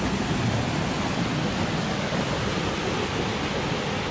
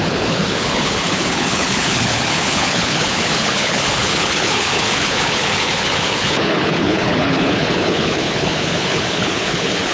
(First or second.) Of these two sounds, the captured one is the first